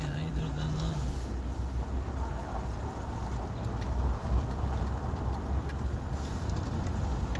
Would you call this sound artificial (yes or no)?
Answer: no